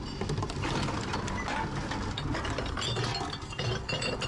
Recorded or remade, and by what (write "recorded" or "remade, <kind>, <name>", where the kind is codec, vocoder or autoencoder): recorded